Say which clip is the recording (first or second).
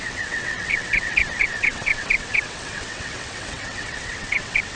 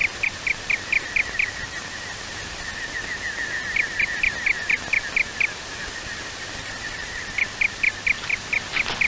second